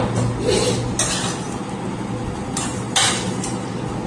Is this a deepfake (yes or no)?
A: no